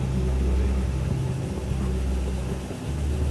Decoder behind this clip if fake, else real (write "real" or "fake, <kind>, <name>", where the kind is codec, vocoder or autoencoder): real